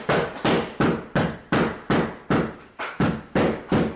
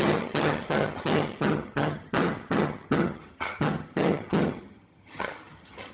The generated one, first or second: second